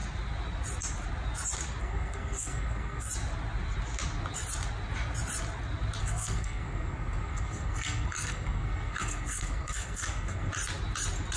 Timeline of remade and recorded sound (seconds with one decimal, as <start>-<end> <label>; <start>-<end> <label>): 0.0-1.8 recorded; 1.8-3.1 remade; 3.1-6.0 recorded; 6.0-10.5 remade; 10.5-11.4 recorded